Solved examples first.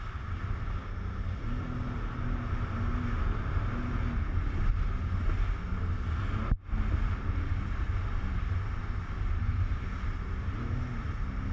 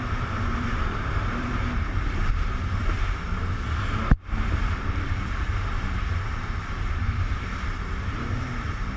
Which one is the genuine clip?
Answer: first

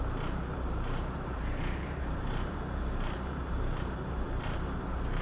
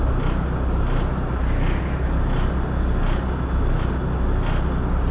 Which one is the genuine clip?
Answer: second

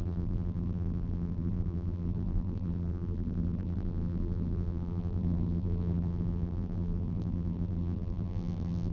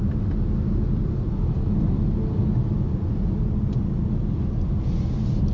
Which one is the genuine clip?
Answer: second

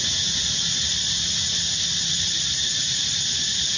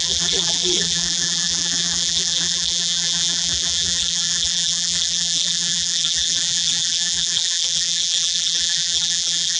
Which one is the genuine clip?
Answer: first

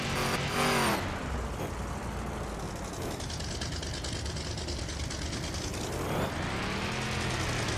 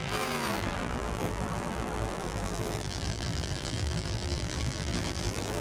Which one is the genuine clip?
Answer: first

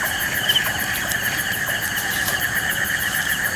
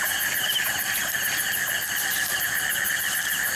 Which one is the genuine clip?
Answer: second